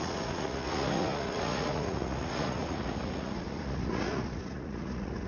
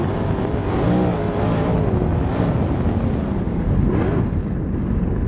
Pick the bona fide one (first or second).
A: second